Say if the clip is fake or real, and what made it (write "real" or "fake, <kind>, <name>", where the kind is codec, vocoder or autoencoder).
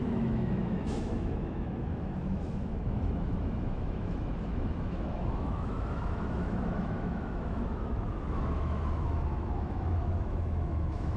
fake, autoencoder, DAC-VAE